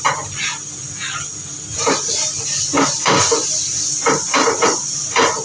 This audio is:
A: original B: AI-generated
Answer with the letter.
A